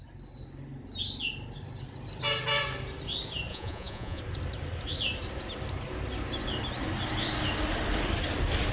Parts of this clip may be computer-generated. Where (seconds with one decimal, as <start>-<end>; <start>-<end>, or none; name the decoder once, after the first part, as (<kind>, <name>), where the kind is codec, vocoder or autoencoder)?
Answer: 3.5-4.2 (vocoder, Vocos)